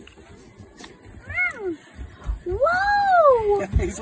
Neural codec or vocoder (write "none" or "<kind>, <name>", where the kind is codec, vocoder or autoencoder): none